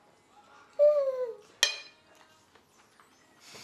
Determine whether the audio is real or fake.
real